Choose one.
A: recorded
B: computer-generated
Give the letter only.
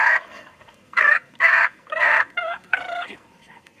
B